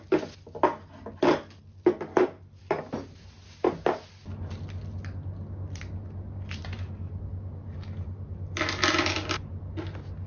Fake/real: real